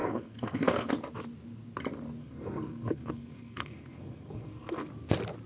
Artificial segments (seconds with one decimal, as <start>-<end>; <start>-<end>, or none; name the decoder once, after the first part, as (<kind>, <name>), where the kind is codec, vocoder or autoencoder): 0.0-0.9 (codec, SNAC); 2.2-4.9